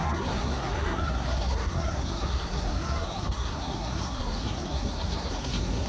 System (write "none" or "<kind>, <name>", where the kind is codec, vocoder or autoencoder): codec, SNAC